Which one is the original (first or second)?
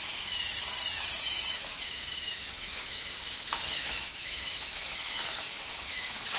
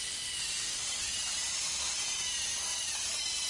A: second